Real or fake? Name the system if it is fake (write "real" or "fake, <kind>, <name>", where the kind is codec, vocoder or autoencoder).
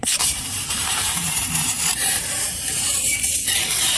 fake, vocoder, BigVGAN v2